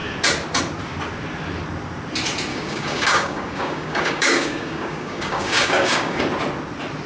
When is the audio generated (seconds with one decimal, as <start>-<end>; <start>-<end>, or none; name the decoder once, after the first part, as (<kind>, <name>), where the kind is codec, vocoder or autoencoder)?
2.5-6.2 (codec, DAC)